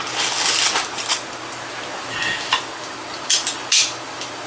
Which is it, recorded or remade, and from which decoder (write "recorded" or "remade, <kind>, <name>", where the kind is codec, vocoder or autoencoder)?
recorded